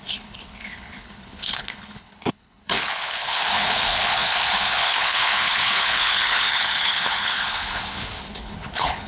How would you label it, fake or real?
fake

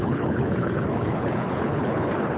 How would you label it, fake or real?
fake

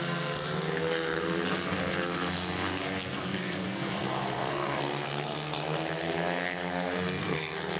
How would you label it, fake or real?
fake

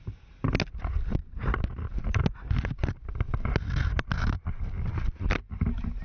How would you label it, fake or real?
real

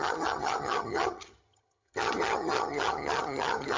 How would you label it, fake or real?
fake